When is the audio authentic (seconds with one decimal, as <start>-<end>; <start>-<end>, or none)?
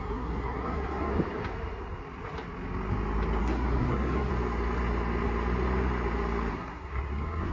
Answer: 1.1-3.4; 4.3-6.5